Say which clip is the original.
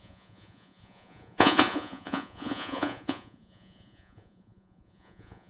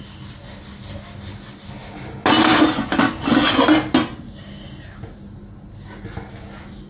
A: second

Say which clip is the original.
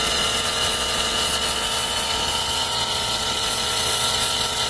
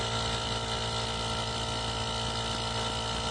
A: second